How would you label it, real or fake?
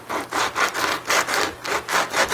real